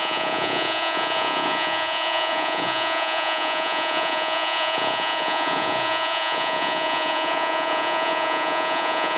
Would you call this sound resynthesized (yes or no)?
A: yes